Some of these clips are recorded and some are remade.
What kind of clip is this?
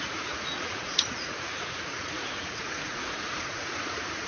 remade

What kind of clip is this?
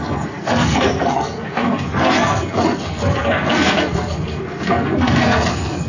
remade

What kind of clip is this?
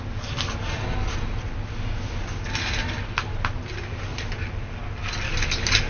recorded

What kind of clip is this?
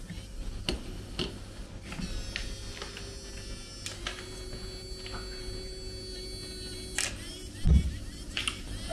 recorded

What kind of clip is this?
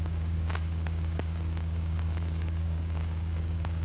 remade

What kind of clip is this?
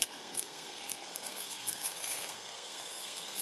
remade